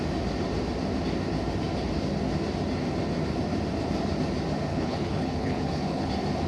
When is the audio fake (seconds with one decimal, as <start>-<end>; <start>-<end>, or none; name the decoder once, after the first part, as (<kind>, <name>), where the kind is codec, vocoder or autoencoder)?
4.7-6.1 (codec, HILCodec)